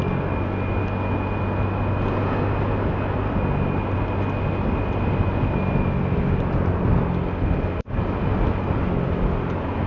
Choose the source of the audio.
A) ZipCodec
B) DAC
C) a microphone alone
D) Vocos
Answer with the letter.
C